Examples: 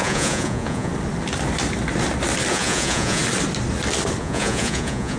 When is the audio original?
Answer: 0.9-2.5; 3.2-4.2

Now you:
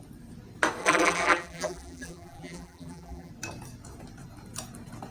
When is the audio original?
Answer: 0.0-0.8; 3.3-5.1

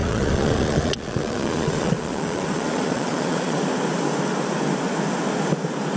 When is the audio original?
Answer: 3.6-6.0

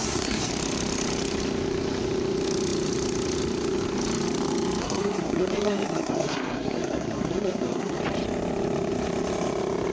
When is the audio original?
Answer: 0.5-4.8; 8.0-9.9